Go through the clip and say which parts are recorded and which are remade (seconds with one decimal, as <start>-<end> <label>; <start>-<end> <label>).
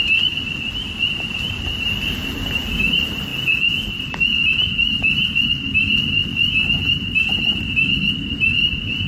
0.0-3.3 remade; 3.3-8.1 recorded; 8.1-9.1 remade